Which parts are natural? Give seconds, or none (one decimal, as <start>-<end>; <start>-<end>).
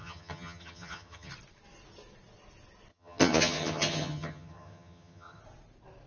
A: 1.3-2.9; 5.4-6.1